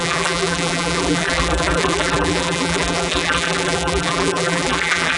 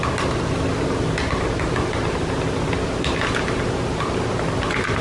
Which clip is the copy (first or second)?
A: first